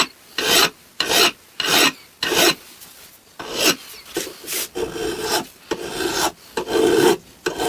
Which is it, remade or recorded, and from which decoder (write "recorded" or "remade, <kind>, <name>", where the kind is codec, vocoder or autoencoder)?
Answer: recorded